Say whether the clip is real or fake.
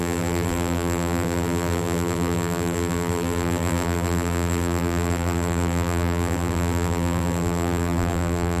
fake